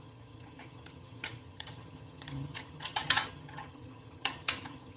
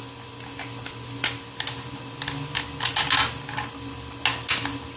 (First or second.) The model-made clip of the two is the first